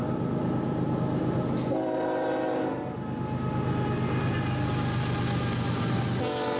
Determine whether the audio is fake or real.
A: real